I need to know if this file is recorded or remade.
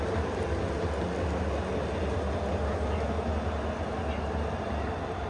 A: recorded